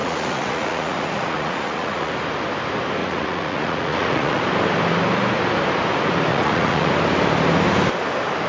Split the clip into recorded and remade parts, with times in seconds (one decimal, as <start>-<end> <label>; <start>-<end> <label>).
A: 0.0-2.1 remade; 2.1-3.0 recorded; 3.0-4.4 remade; 4.4-6.3 recorded; 6.3-6.9 remade; 6.9-8.5 recorded